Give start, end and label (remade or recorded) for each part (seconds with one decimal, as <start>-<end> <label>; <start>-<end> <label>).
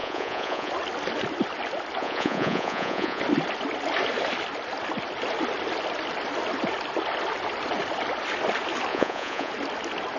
0.0-0.7 remade; 0.7-2.0 recorded; 2.0-3.2 remade; 3.2-8.9 recorded; 8.9-9.5 remade; 9.5-10.2 recorded